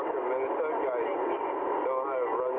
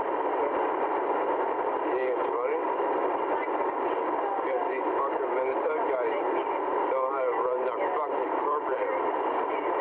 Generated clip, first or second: second